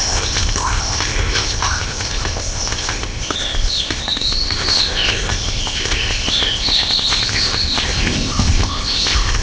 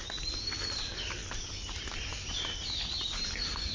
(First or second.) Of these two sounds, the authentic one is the second